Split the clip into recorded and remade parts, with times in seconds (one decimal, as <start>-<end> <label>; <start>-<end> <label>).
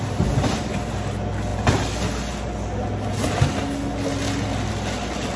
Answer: 0.0-5.4 recorded